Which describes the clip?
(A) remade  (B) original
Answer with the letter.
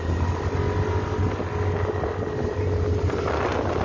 B